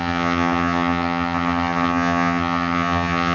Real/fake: fake